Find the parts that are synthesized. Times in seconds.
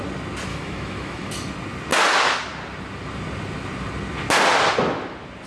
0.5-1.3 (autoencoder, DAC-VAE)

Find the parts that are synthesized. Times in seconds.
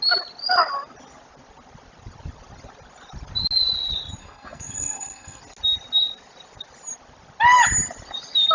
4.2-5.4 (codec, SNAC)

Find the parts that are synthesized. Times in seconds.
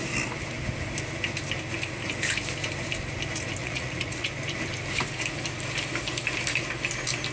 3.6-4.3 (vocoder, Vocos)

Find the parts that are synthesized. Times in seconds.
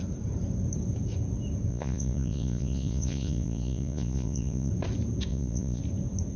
1.7-4.7 (vocoder, Vocos); 5.3-5.8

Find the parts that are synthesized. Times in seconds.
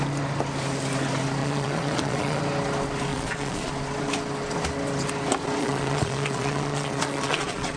1.4-2.4 (vocoder, Vocos); 3.1-3.7; 5.6-7.8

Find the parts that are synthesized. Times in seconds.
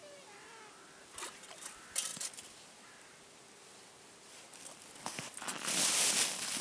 none